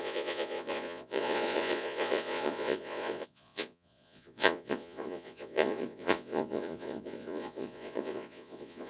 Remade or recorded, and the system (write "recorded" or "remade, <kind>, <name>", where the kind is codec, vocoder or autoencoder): remade, vocoder, Vocos